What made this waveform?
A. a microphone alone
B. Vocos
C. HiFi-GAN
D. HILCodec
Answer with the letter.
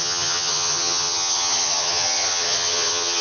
C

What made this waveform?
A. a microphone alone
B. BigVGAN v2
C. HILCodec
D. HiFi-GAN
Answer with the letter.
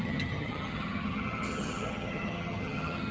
D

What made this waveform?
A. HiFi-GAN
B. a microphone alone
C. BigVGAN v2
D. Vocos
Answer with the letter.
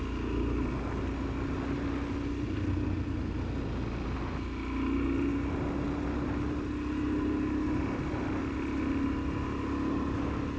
B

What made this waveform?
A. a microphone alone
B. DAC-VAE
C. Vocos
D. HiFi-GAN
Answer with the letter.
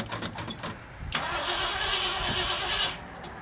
A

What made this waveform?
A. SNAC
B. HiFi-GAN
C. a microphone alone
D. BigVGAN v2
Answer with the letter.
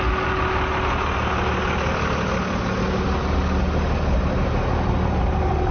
C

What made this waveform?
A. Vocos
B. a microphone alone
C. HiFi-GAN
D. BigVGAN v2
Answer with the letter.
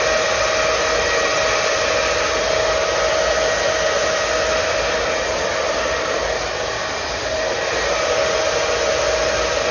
B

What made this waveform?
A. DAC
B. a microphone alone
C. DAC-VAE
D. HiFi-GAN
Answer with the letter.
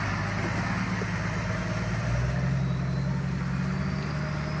B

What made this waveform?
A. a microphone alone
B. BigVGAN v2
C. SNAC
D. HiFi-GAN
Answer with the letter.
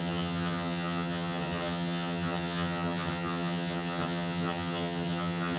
D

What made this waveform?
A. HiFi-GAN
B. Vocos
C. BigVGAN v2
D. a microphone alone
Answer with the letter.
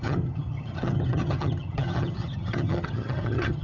A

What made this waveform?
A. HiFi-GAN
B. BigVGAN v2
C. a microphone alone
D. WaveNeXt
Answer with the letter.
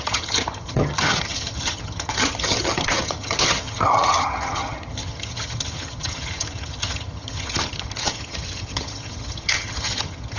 A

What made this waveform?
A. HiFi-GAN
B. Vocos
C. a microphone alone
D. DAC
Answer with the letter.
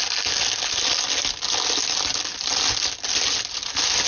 C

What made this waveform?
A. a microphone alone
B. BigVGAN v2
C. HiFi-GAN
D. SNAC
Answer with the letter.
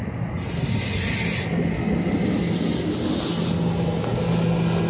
A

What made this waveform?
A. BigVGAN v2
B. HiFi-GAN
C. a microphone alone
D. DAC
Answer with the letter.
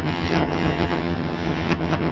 B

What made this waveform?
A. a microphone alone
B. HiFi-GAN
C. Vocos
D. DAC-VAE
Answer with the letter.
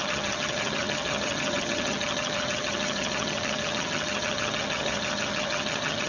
B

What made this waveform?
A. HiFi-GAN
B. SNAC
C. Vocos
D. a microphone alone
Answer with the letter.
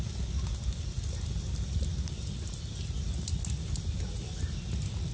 D